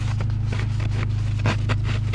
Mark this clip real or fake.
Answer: real